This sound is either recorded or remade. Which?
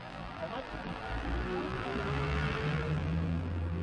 remade